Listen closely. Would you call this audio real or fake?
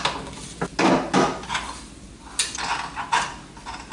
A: real